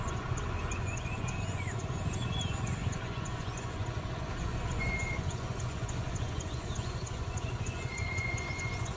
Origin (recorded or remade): remade